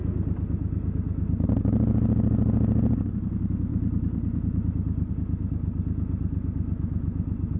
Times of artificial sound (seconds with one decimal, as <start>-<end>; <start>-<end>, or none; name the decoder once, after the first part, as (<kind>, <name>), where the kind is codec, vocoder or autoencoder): 3.7-5.1 (vocoder, BigVGAN v2)